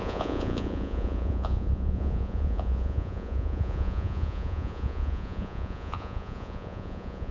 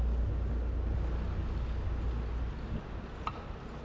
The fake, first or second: first